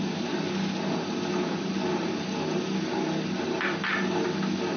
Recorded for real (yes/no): yes